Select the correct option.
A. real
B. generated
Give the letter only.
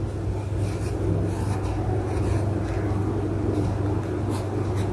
A